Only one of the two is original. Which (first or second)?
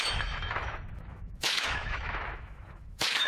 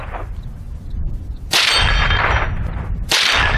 second